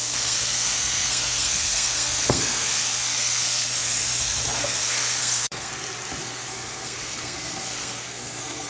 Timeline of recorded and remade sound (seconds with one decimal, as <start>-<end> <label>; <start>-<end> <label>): 0.0-5.7 remade; 5.7-6.2 recorded; 6.2-8.7 remade